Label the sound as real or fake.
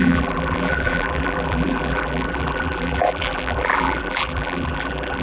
fake